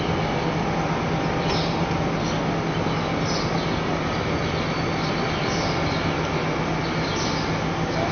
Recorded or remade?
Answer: recorded